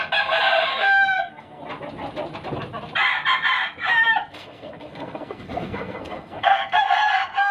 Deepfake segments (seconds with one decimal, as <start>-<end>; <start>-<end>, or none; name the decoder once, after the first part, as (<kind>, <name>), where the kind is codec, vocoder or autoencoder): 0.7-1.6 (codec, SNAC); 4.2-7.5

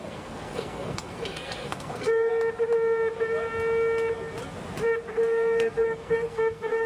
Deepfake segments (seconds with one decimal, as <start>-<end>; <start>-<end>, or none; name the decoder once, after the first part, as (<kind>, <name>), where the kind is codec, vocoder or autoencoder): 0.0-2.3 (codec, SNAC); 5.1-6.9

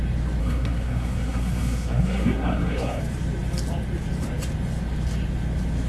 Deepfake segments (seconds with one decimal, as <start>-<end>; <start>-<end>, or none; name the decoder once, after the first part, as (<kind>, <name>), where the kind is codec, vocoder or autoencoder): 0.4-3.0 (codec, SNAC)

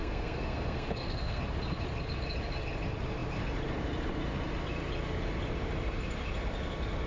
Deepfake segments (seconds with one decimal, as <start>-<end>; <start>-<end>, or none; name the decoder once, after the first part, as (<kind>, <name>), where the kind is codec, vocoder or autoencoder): 0.0-1.4 (codec, SNAC)

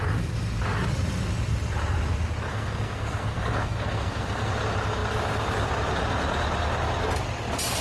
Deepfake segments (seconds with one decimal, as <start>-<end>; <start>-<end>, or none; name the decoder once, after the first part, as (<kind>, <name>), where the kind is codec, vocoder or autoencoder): 2.5-4.5 (codec, SNAC)

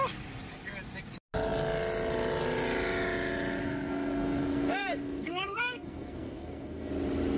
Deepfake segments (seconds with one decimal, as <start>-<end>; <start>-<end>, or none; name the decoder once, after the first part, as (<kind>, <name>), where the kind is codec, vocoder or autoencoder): 3.6-6.9 (codec, SNAC)

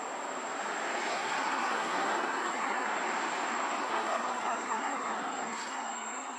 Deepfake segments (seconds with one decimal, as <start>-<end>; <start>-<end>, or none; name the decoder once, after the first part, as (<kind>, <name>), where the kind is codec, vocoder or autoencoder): 1.1-3.0 (codec, SNAC); 3.8-6.4